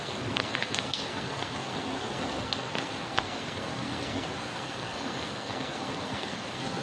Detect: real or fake fake